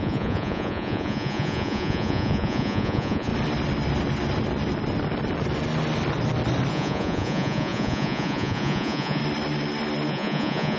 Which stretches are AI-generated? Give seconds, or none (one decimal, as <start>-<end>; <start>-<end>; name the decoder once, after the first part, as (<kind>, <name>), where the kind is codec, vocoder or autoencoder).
0.0-3.3 (vocoder, Vocos); 6.7-9.2; 10.1-10.8